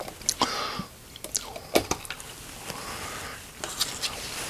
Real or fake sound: real